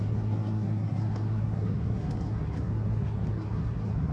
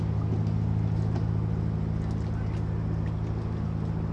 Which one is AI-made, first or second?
first